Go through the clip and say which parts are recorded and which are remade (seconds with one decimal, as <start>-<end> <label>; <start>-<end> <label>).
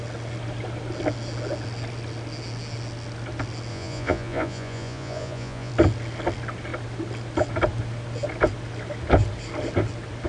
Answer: 0.0-3.7 recorded; 3.7-5.7 remade; 5.7-10.3 recorded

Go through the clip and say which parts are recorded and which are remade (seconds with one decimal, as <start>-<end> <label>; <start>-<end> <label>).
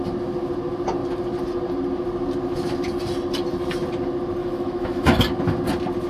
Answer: 0.0-4.4 recorded; 4.4-5.2 remade; 5.2-6.1 recorded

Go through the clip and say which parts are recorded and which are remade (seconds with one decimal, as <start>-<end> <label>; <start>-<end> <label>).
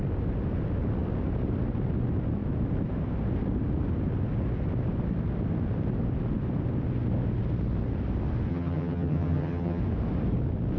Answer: 0.0-8.5 recorded; 8.5-9.8 remade; 9.8-10.8 recorded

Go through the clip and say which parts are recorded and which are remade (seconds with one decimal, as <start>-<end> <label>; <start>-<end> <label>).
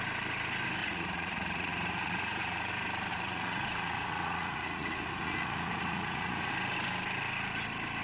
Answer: 0.0-0.8 recorded; 0.8-2.7 remade; 2.7-3.1 recorded; 3.1-6.5 remade; 6.5-8.0 recorded